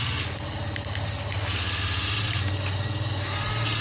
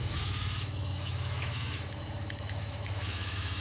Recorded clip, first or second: first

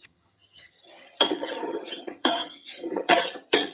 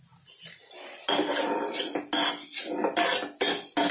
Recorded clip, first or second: second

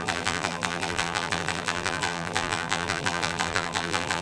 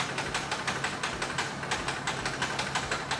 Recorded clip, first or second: second